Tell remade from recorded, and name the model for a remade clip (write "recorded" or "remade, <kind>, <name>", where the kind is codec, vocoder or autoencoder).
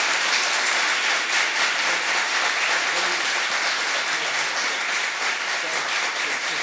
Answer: recorded